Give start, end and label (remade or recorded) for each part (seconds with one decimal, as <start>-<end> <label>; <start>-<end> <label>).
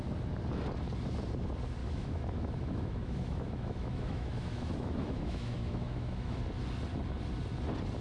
0.0-1.8 recorded; 1.8-6.4 remade; 6.4-8.0 recorded